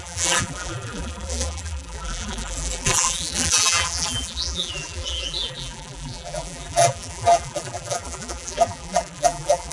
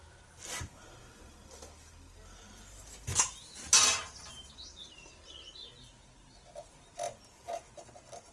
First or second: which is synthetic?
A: first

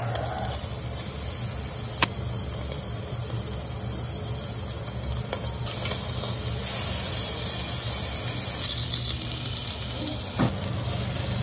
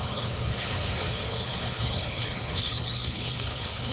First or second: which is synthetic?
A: second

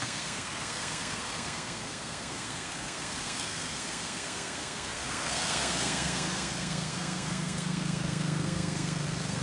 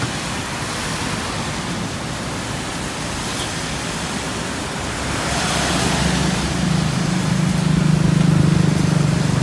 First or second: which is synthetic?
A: first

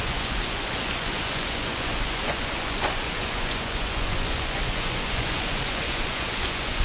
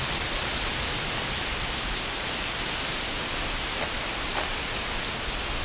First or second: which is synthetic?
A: first